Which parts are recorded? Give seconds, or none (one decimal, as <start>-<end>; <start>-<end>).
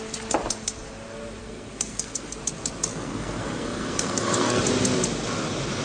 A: 0.0-1.4; 2.4-2.9; 4.6-5.8